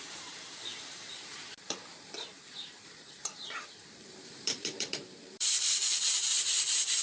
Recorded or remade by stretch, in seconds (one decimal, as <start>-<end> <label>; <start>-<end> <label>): 0.0-6.3 remade; 6.3-7.0 recorded